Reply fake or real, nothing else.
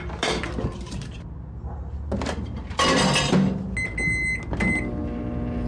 real